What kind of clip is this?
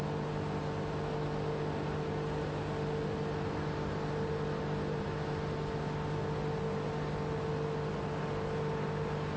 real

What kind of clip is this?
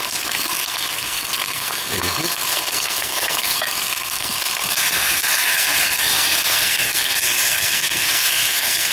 fake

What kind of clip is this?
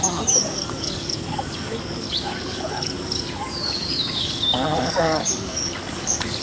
fake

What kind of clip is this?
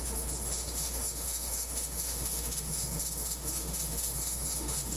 fake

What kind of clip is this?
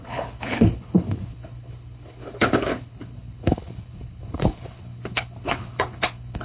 fake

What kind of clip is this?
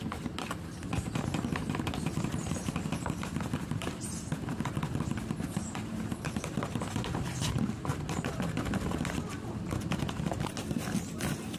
real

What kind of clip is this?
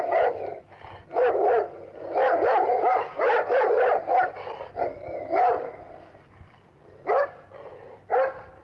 real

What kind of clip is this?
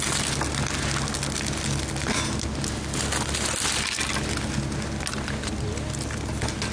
real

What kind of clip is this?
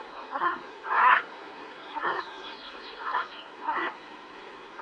fake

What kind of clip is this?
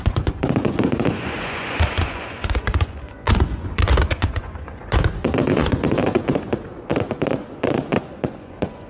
fake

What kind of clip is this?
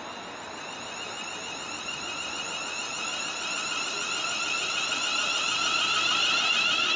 real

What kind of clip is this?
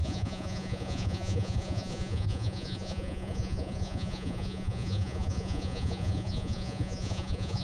fake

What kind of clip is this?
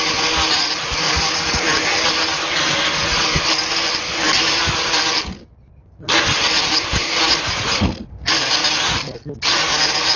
real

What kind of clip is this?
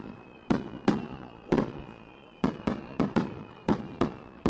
fake